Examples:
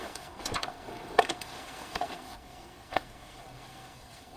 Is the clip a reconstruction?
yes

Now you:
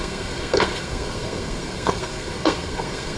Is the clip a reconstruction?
yes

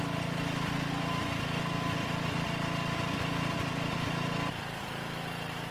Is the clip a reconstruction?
no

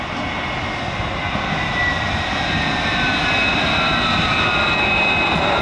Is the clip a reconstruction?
no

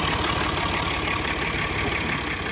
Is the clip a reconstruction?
no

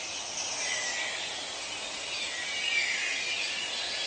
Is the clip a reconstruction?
no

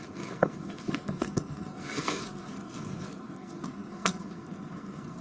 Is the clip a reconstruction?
yes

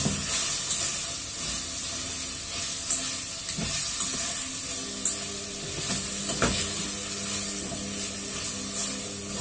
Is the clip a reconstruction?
no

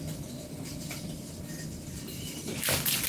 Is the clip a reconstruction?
no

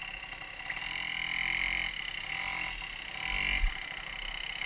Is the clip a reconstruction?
no